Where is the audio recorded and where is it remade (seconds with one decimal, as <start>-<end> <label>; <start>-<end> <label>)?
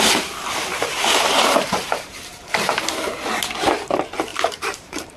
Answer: 0.0-0.7 recorded; 0.7-2.8 remade; 2.8-4.3 recorded; 4.3-5.2 remade